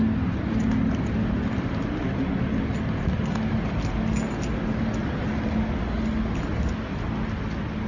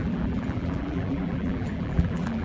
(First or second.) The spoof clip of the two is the second